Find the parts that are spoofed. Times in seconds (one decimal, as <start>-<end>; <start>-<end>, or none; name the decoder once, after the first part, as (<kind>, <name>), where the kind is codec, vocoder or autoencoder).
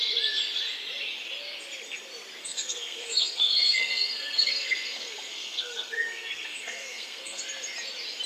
2.4-7.4 (codec, SNAC)